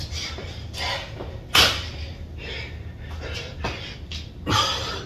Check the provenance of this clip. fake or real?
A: real